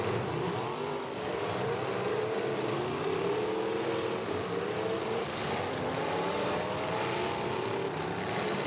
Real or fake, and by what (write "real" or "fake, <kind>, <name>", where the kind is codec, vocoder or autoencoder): fake, vocoder, BigVGAN v2